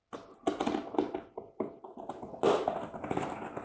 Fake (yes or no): no